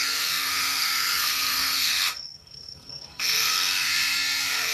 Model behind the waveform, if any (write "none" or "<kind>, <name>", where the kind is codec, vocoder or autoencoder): codec, SNAC